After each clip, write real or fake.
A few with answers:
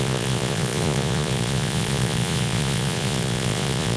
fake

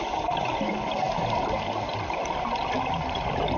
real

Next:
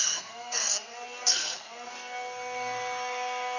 fake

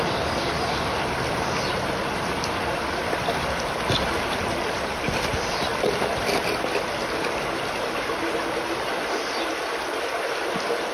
real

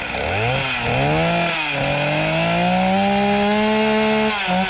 real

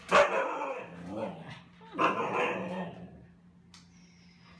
real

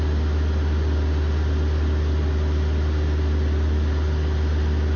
real